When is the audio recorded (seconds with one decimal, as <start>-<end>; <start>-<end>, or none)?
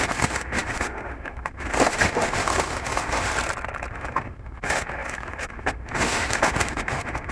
3.3-3.9